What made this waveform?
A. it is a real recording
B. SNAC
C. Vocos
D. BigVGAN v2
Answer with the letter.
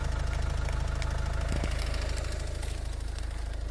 A